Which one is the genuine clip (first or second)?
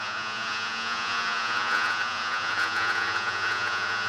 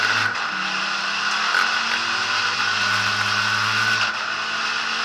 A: second